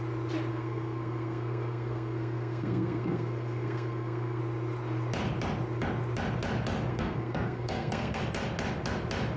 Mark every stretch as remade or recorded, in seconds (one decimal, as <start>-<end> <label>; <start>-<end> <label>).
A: 0.0-0.5 recorded; 0.5-4.4 remade; 4.4-6.9 recorded; 6.9-8.2 remade; 8.2-9.4 recorded